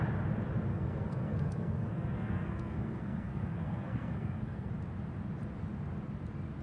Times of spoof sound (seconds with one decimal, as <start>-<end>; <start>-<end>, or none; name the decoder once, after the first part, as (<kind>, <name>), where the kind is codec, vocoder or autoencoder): 0.7-4.7 (codec, SNAC)